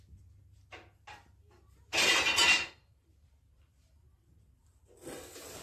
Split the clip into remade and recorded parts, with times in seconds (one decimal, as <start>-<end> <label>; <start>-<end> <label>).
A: 0.0-1.4 recorded; 1.4-4.8 remade; 4.8-5.6 recorded